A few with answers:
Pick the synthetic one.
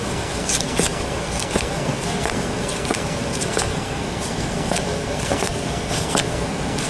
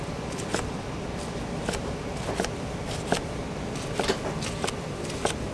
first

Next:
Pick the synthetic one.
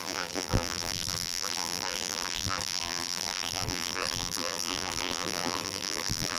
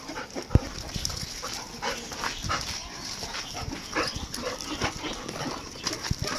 first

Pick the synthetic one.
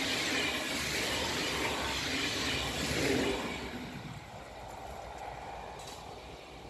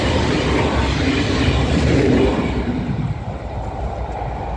second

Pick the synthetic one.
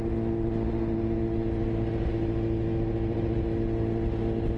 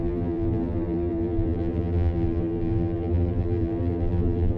second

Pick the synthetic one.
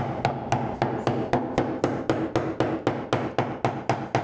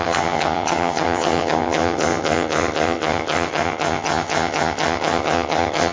second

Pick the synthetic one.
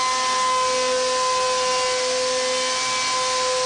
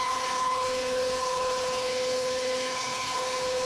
second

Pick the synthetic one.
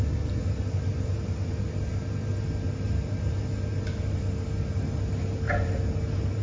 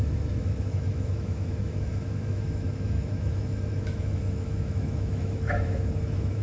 second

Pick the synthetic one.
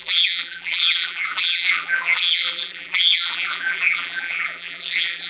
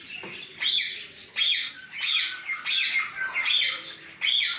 first